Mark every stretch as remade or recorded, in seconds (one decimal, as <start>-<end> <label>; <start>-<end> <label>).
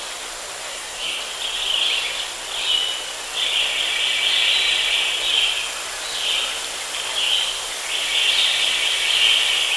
0.0-0.7 recorded; 0.7-1.2 remade; 1.2-9.8 recorded